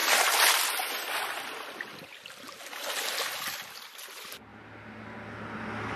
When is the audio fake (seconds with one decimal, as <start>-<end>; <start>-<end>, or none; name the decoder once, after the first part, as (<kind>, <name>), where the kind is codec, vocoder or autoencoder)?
none

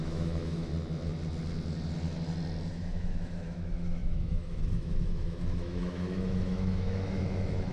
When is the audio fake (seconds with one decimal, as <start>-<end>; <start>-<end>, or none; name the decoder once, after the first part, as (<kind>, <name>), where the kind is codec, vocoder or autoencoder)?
0.0-0.7 (autoencoder, DAC-VAE); 2.7-7.7

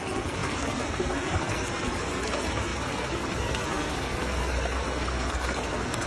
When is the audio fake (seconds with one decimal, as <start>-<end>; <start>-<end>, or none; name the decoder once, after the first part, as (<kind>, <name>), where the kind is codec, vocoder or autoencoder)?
0.0-6.1 (codec, SNAC)

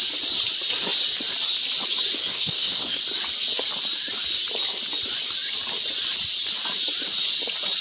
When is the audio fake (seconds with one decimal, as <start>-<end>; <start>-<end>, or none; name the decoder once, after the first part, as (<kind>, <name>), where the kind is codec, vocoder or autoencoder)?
2.2-3.0 (codec, SNAC)

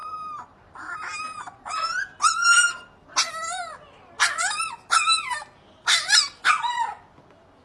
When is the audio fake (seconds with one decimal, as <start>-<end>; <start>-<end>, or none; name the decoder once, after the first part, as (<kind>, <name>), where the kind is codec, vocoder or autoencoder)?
none

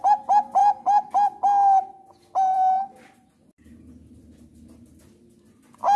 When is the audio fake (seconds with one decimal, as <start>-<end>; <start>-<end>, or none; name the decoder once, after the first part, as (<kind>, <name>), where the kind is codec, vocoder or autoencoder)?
none

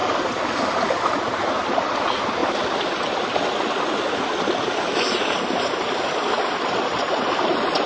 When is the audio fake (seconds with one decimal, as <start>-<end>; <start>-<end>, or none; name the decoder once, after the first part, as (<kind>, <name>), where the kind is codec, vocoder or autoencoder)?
none

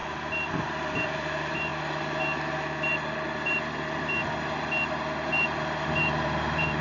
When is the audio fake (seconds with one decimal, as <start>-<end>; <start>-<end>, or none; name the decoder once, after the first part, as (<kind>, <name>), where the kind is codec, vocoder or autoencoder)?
1.0-1.7 (vocoder, BigVGAN v2); 5.3-6.8